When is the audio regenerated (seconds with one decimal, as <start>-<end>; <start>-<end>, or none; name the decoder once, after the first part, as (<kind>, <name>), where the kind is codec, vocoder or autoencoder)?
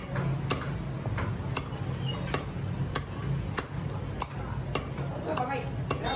none